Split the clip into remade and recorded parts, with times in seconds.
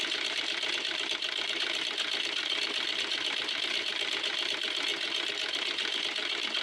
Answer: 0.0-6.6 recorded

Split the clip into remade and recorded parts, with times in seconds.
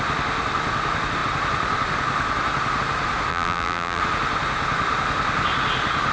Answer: 0.0-3.3 recorded; 3.3-4.0 remade; 4.0-6.1 recorded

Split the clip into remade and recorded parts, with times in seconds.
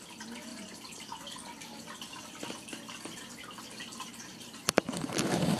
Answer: 0.0-5.6 recorded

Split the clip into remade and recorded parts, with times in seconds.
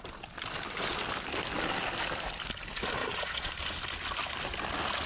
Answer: 0.0-3.0 recorded; 3.0-3.5 remade; 3.5-5.1 recorded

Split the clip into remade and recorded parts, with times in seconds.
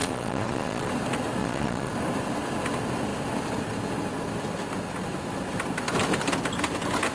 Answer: 0.0-0.9 remade; 0.9-1.4 recorded; 1.4-1.9 remade; 1.9-7.1 recorded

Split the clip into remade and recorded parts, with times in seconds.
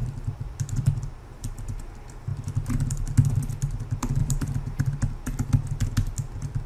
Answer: 0.0-1.8 remade; 1.8-4.2 recorded; 4.2-4.8 remade; 4.8-6.7 recorded